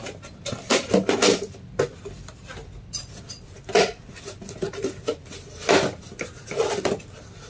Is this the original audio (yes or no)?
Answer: no